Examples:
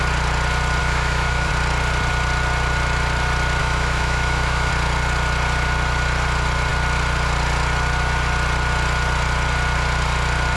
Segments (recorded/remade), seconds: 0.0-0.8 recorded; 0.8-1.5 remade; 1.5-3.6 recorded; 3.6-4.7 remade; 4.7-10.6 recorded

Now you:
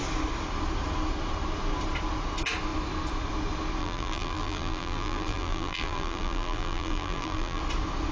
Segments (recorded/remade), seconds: 0.0-3.8 recorded; 3.8-7.6 remade; 7.6-8.1 recorded

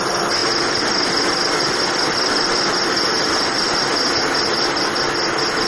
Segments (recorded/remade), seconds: 0.0-5.7 recorded